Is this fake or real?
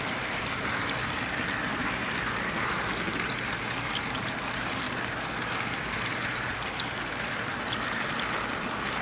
real